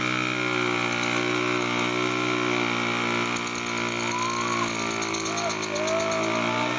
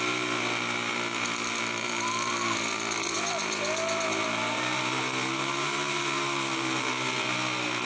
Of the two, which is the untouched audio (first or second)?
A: first